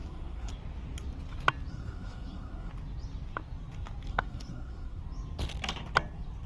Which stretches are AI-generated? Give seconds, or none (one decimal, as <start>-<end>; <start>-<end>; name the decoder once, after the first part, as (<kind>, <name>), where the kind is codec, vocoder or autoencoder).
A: 0.0-0.5 (codec, SNAC); 1.7-2.7; 4.1-5.0